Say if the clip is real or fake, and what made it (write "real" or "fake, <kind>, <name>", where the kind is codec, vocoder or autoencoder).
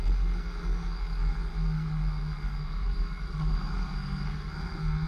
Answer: fake, codec, SNAC